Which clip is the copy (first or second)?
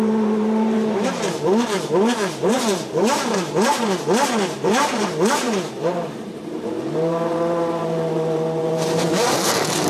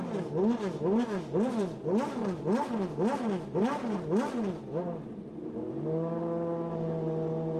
first